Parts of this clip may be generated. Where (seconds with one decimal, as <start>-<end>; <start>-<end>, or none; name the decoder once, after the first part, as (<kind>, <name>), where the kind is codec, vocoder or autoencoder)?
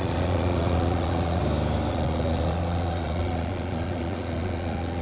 0.0-1.4 (vocoder, Vocos); 1.9-5.0